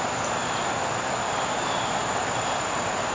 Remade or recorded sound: remade